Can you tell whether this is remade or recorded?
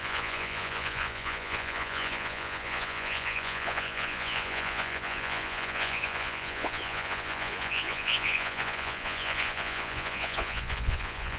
remade